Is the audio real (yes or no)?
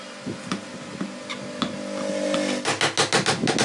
yes